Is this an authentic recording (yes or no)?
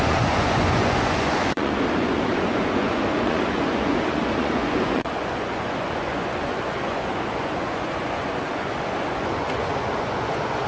no